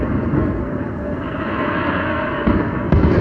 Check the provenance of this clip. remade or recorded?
remade